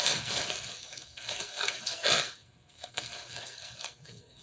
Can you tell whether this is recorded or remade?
remade